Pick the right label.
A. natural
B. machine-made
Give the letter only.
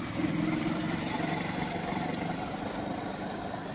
B